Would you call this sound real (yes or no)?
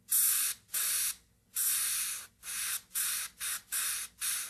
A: yes